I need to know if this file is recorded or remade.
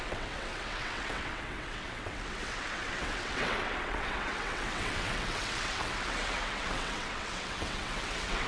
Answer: remade